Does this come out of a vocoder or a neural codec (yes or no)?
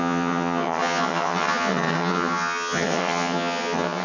yes